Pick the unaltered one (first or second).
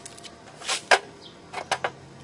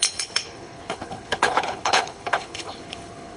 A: first